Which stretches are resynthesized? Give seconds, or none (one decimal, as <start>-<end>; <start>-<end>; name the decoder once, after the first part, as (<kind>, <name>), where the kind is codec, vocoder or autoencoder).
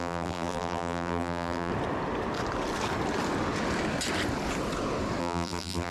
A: 0.0-1.7 (vocoder, BigVGAN v2); 5.2-5.9